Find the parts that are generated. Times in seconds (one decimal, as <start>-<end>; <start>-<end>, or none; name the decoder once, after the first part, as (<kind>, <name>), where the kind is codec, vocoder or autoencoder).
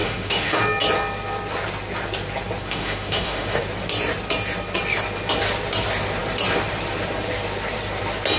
0.0-0.6 (autoencoder, DAC-VAE); 2.6-3.6